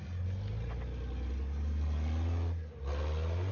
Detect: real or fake real